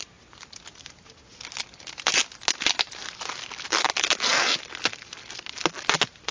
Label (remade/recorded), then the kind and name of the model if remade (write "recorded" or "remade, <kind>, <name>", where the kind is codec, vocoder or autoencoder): recorded